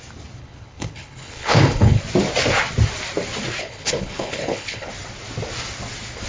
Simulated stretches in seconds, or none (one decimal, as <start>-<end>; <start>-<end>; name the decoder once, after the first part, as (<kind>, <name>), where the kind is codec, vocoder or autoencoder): 0.4-2.0 (codec, HILCodec); 3.6-4.9